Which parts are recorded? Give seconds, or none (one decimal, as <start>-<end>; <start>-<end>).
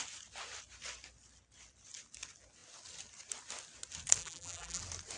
0.0-4.2; 4.8-5.2